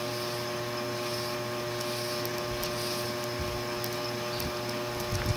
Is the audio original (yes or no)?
yes